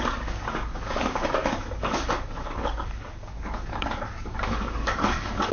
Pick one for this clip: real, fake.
fake